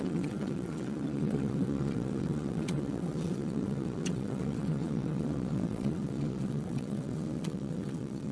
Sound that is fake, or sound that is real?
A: fake